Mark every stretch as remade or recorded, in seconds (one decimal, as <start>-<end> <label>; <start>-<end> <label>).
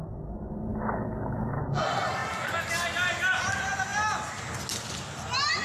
0.0-0.7 recorded; 0.7-1.6 remade; 1.6-5.6 recorded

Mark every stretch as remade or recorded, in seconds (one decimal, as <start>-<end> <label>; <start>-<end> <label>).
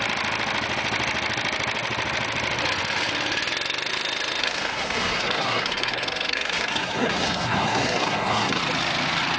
0.0-4.4 recorded; 4.4-8.6 remade; 8.6-9.4 recorded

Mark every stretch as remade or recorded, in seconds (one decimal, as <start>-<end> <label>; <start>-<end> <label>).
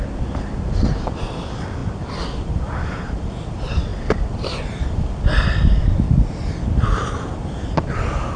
0.0-8.4 recorded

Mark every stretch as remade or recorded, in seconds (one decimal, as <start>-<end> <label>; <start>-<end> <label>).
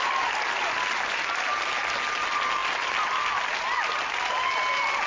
0.0-5.1 recorded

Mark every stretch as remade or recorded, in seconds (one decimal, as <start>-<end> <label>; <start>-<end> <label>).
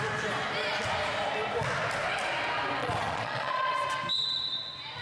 0.0-2.8 recorded; 2.8-3.7 remade; 3.7-5.0 recorded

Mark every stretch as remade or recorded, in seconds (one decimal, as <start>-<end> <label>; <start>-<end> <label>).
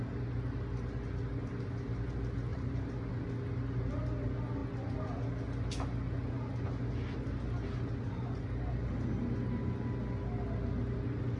0.0-2.5 recorded; 2.5-3.1 remade; 3.1-11.4 recorded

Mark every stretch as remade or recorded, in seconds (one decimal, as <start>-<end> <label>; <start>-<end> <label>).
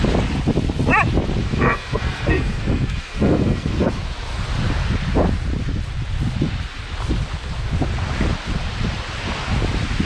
0.0-1.4 recorded; 1.4-3.9 remade; 3.9-10.1 recorded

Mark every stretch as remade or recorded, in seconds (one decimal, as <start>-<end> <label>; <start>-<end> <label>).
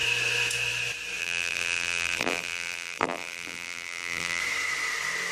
0.0-1.2 recorded; 1.2-4.4 remade; 4.4-5.3 recorded